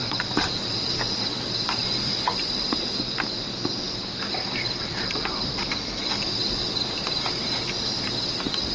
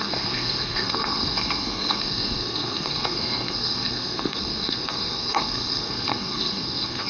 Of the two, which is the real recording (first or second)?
first